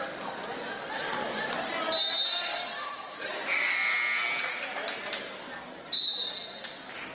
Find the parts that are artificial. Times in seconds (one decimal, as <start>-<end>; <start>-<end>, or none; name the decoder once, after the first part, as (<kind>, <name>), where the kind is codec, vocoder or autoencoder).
2.2-3.3 (vocoder, BigVGAN v2)